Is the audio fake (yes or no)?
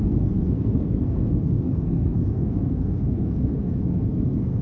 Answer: yes